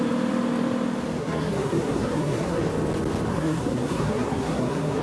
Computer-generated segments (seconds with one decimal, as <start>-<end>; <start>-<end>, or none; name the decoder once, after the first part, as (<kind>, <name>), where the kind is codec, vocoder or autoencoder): 1.2-2.6 (codec, SNAC); 3.3-5.0